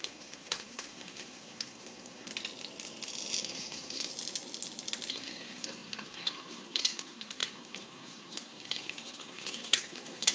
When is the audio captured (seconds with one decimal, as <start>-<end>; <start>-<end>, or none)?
2.3-3.4; 4.1-5.1